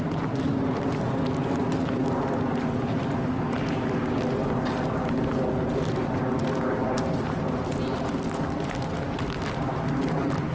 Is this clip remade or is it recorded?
recorded